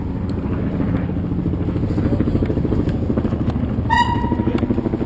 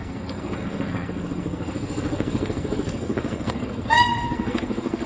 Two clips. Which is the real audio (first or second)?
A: first